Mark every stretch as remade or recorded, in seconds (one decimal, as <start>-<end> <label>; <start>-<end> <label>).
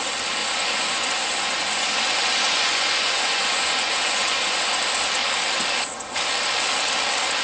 0.0-0.4 recorded; 0.4-4.8 remade; 4.8-7.4 recorded